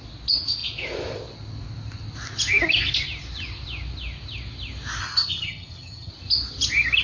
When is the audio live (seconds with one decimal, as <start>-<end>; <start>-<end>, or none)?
0.0-5.0; 6.1-7.0